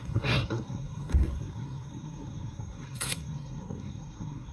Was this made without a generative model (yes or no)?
no